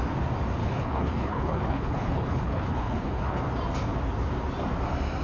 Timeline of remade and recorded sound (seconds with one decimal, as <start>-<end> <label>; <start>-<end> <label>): 0.0-0.6 recorded; 0.6-3.4 remade; 3.4-5.2 recorded

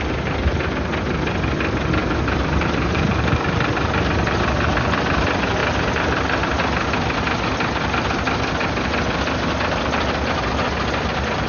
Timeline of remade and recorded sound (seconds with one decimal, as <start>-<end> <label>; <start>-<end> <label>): 0.0-2.0 recorded; 2.0-3.6 remade; 3.6-11.5 recorded

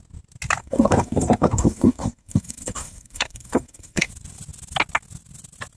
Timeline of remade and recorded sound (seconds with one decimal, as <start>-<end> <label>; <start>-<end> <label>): 0.0-0.6 recorded; 0.6-4.1 remade; 4.1-5.8 recorded

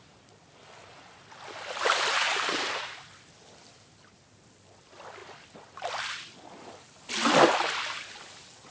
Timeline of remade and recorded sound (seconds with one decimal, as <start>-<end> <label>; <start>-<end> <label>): 0.0-8.7 recorded

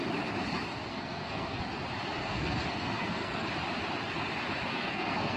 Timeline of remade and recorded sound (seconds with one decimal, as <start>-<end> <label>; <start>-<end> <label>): 0.0-0.9 recorded; 0.9-1.6 remade; 1.6-2.2 recorded; 2.2-3.5 remade; 3.5-4.7 recorded; 4.7-5.4 remade

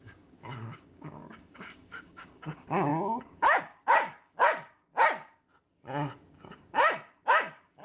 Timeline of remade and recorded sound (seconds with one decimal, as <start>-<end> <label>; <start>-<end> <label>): 0.0-4.9 remade; 4.9-6.3 recorded; 6.3-7.8 remade